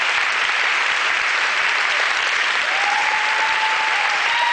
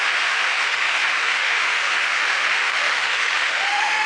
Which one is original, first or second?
first